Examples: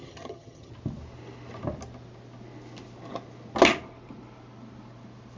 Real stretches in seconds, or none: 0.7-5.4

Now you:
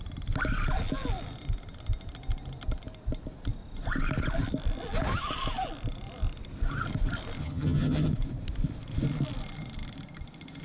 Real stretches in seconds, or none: 0.0-7.4; 8.1-10.6